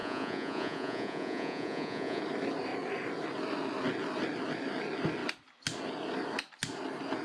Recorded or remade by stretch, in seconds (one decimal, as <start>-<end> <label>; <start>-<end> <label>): 0.0-2.2 remade; 2.2-7.2 recorded